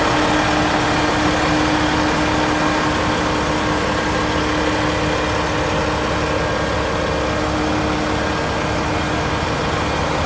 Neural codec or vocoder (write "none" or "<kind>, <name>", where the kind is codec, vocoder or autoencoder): none